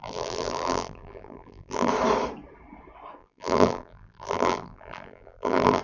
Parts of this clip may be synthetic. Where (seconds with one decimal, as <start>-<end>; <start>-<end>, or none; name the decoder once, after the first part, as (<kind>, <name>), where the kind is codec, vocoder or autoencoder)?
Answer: 0.0-1.9 (vocoder, BigVGAN v2); 3.2-5.8